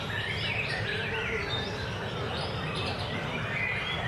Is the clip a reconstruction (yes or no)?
no